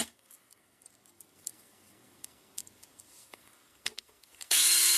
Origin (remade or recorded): remade